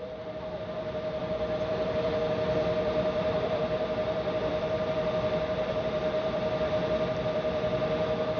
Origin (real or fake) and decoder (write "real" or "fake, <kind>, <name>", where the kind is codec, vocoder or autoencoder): fake, vocoder, BigVGAN v2